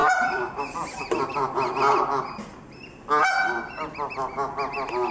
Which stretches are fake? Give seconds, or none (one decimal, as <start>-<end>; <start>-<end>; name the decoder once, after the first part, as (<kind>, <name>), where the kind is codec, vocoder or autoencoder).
0.0-0.9 (vocoder, BigVGAN v2)